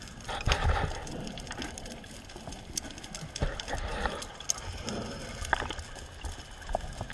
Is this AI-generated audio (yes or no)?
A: no